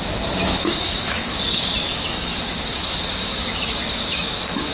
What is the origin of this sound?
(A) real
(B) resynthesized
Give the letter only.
B